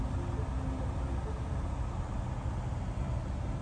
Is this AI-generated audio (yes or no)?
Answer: no